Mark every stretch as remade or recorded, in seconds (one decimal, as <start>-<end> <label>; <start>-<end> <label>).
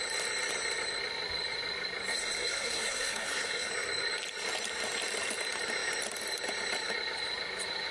0.0-2.1 recorded; 2.1-3.7 remade; 3.7-7.9 recorded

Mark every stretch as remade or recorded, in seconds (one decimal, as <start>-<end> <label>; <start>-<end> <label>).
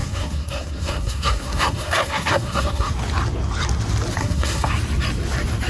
0.0-2.9 remade; 2.9-4.2 recorded; 4.2-4.7 remade; 4.7-5.7 recorded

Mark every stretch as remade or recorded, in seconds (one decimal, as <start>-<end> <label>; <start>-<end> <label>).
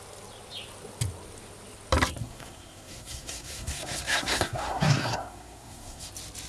0.0-2.2 recorded; 2.2-6.1 remade; 6.1-6.5 recorded